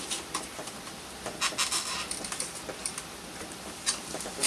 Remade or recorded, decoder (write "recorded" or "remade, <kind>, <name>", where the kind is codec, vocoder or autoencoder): recorded